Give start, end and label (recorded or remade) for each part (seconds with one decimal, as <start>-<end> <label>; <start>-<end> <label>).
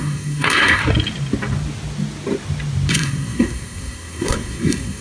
0.0-0.8 remade; 0.8-2.9 recorded; 2.9-5.0 remade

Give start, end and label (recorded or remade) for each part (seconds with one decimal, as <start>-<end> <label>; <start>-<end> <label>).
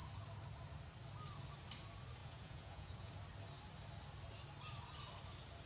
0.0-2.2 recorded; 2.2-3.1 remade; 3.1-5.7 recorded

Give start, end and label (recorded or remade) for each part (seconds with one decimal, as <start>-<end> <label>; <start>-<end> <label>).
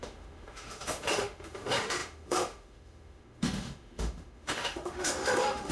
0.0-5.7 remade